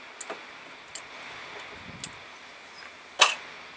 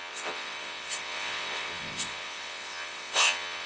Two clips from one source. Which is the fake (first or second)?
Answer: second